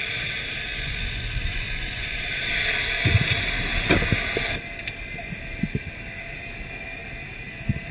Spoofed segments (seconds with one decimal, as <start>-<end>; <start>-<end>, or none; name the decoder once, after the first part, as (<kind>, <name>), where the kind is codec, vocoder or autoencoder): 0.7-2.3 (vocoder, Vocos)